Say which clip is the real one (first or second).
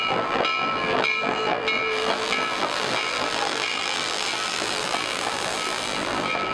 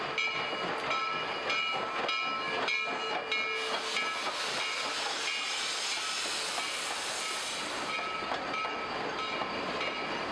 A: second